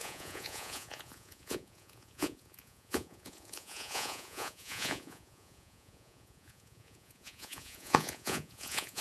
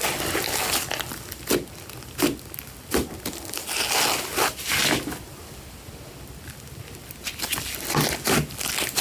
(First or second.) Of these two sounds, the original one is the second